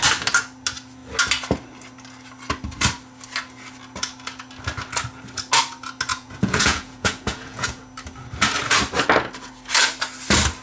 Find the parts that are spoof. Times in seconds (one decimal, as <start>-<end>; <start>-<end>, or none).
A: 6.1-7.8